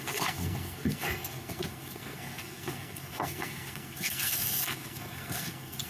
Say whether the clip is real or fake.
fake